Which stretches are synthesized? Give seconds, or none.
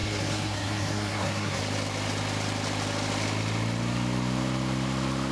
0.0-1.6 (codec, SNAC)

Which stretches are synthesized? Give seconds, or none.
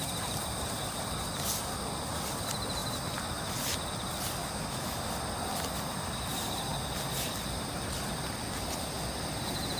4.4-5.1 (autoencoder, DAC-VAE)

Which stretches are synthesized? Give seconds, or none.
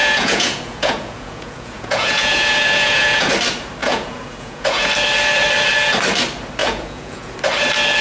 0.0-3.3 (vocoder, Vocos); 3.8-4.9; 6.6-7.3